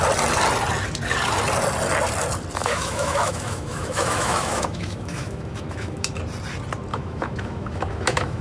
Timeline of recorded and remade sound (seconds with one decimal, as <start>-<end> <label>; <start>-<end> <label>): 0.0-2.6 recorded; 2.6-6.2 remade; 6.2-6.9 recorded; 6.9-8.4 remade